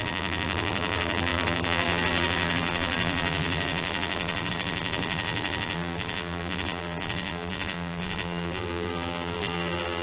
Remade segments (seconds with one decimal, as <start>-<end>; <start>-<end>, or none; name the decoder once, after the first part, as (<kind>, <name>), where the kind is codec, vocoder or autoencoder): 0.0-10.0 (vocoder, BigVGAN v2)